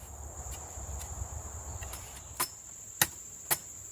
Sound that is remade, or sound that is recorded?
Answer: recorded